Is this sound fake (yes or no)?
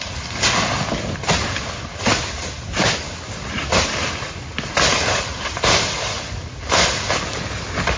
no